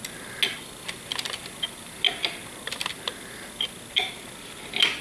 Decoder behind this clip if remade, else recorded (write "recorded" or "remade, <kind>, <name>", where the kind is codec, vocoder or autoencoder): recorded